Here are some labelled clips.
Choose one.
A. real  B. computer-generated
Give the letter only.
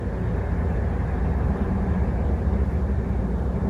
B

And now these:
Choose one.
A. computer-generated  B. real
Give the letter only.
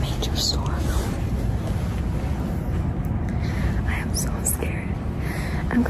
B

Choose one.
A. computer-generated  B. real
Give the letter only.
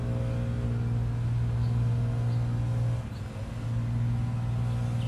B